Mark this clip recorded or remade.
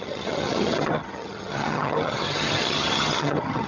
remade